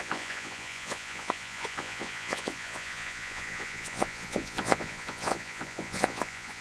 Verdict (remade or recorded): remade